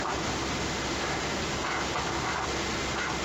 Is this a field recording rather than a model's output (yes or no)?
no